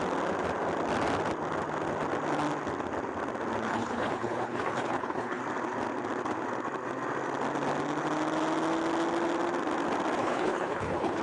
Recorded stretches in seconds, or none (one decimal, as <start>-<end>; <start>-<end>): 0.0-3.7; 5.4-10.2